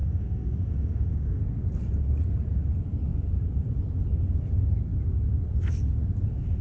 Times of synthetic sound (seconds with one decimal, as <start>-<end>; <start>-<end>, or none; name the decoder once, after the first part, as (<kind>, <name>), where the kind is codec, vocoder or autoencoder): 0.0-1.4 (autoencoder, DAC-VAE)